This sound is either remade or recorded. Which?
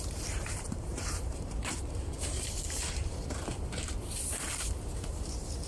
remade